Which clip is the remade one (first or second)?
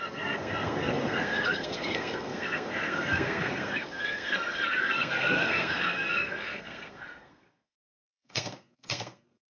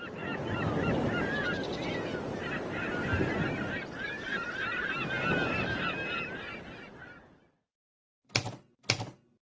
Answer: first